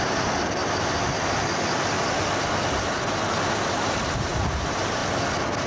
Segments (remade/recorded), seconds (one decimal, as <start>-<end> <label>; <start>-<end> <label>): 0.0-0.6 remade; 0.6-3.7 recorded; 3.7-5.0 remade; 5.0-5.7 recorded